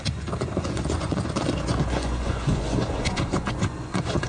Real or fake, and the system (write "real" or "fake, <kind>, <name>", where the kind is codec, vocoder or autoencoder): fake, vocoder, Vocos